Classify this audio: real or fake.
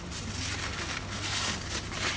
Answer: real